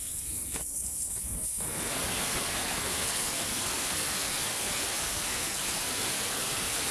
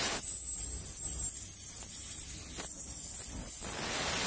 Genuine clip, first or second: second